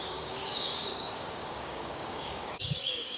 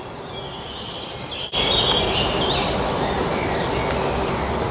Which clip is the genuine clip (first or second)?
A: second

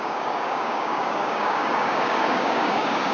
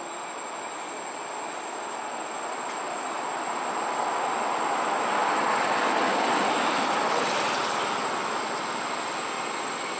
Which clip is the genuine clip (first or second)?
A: second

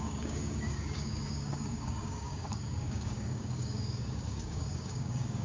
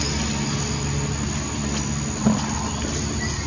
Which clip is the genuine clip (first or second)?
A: second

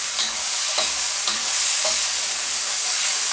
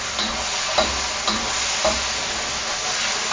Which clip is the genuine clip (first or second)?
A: second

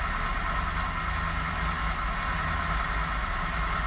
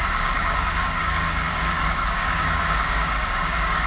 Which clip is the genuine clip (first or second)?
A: first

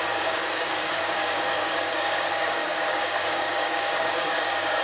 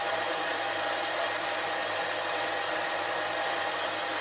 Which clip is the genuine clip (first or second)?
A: second